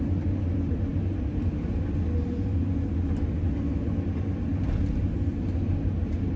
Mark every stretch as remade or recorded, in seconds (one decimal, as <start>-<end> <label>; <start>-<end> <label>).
0.0-6.4 recorded